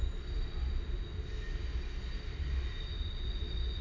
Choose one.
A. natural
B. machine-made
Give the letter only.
A